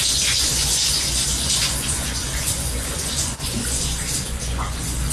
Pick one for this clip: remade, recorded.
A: remade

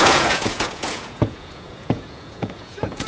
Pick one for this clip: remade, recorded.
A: remade